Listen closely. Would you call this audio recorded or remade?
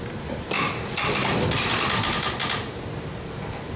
recorded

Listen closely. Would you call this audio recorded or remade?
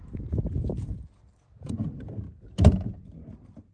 recorded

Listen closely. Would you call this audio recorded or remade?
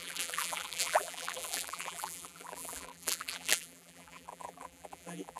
remade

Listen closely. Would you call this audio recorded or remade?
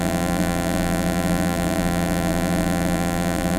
remade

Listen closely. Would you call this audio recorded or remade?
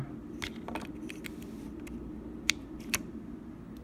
recorded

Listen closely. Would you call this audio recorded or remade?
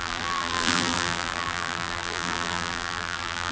remade